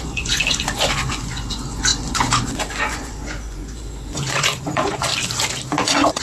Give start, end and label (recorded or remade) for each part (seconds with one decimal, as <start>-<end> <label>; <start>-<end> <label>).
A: 0.0-5.1 remade; 5.1-5.8 recorded; 5.8-6.2 remade